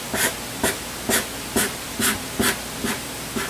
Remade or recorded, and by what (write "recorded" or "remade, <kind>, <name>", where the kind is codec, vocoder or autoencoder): recorded